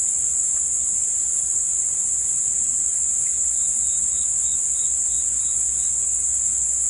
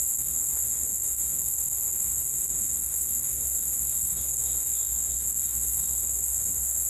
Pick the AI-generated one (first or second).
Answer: second